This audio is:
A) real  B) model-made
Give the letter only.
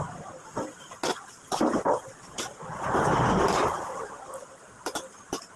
A